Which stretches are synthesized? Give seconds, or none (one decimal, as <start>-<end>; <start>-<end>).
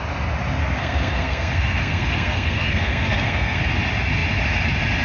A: 0.6-3.6